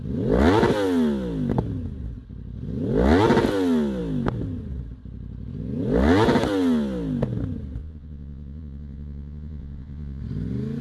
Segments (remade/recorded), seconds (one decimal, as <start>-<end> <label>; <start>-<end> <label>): 0.0-7.8 recorded; 7.8-10.2 remade; 10.2-10.8 recorded

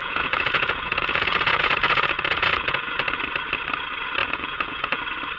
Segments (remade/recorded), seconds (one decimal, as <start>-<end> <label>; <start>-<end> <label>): 0.0-3.2 remade; 3.2-4.2 recorded; 4.2-5.0 remade; 5.0-5.4 recorded

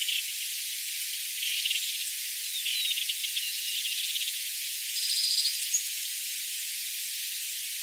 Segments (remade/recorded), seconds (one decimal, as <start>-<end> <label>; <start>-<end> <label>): 0.0-3.2 recorded; 3.2-6.9 remade; 6.9-7.8 recorded

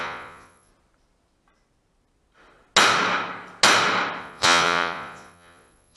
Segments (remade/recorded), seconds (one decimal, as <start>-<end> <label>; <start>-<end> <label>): 0.0-0.7 remade; 0.7-4.2 recorded; 4.2-6.0 remade

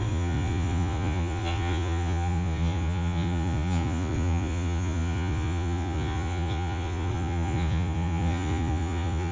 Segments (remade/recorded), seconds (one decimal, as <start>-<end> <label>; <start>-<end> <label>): 0.0-9.3 remade